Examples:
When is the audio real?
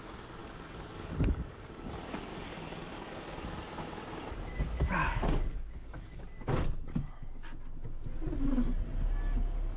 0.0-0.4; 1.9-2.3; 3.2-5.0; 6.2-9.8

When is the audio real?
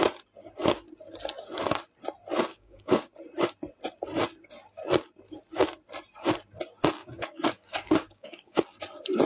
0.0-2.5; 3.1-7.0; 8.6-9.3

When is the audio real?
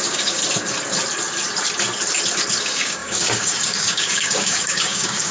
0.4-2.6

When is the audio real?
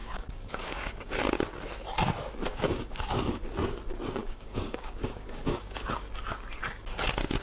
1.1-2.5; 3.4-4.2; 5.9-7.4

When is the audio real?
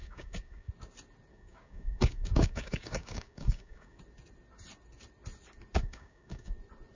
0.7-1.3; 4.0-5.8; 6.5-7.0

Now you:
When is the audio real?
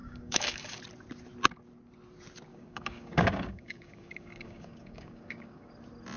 0.8-2.5; 5.7-6.2